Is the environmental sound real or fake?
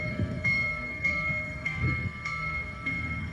fake